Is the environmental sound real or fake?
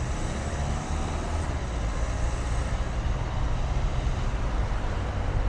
real